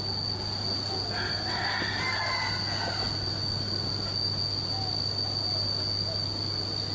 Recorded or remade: recorded